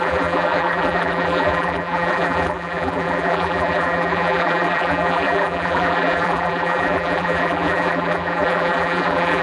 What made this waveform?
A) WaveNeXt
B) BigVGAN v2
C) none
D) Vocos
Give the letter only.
B